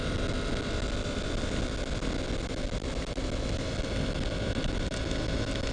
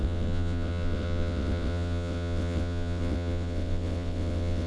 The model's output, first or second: second